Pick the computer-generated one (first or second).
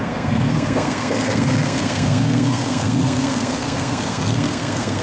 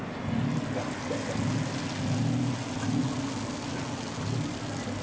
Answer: first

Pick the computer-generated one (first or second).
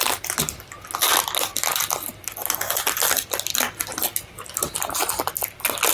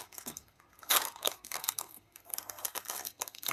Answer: second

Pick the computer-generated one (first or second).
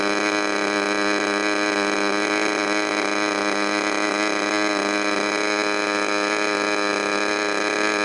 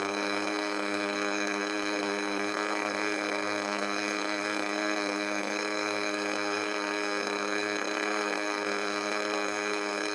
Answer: second